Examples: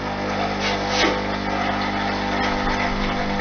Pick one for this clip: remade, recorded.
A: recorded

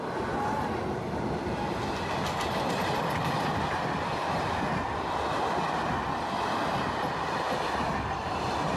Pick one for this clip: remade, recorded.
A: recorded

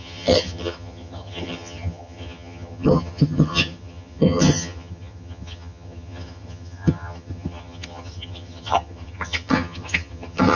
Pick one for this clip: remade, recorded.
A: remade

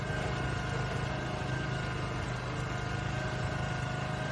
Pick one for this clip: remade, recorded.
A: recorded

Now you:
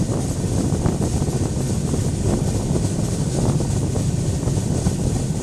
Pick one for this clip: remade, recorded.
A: recorded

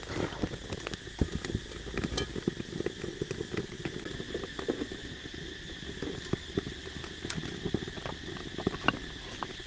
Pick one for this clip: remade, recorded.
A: recorded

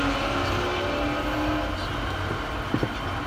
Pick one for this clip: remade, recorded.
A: recorded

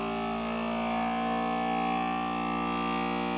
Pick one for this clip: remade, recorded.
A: recorded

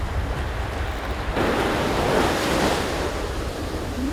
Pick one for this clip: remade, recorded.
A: recorded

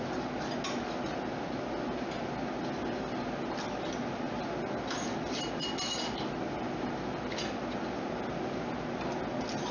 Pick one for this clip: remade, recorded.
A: recorded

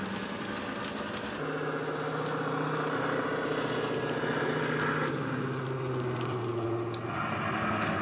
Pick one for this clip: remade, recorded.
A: recorded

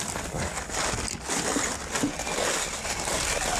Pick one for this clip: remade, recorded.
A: recorded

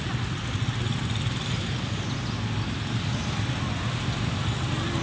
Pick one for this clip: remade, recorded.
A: recorded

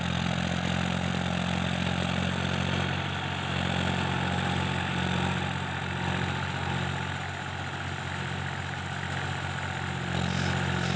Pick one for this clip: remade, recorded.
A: recorded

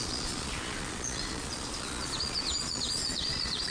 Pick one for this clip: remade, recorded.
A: remade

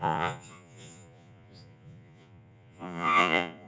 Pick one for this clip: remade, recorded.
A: remade